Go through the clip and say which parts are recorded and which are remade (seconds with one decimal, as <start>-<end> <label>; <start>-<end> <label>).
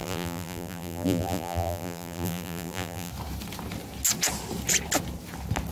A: 0.0-3.1 remade; 3.1-5.7 recorded